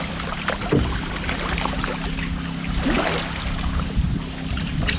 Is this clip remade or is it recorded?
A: recorded